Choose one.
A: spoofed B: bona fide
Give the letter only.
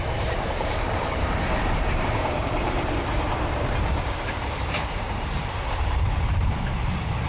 A